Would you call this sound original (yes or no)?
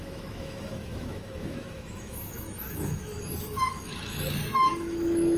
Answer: no